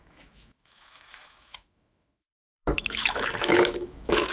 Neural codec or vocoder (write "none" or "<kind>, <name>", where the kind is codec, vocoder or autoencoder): autoencoder, DAC-VAE